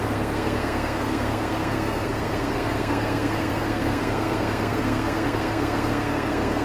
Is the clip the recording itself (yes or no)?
no